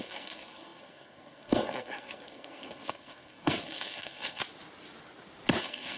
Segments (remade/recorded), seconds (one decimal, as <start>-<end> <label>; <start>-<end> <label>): 0.0-4.4 remade; 4.4-5.6 recorded; 5.6-6.0 remade